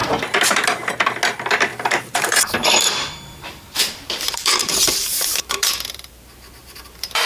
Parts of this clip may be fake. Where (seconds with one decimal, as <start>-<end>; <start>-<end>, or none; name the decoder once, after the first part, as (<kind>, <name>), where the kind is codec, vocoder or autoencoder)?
0.0-0.9 (vocoder, BigVGAN v2); 1.7-6.1; 6.6-7.3